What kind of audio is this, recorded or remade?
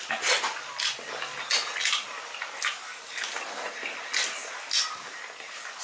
recorded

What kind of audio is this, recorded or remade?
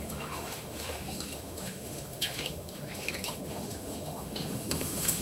remade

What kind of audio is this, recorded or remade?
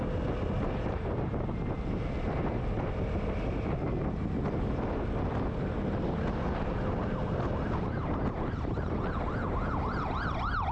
recorded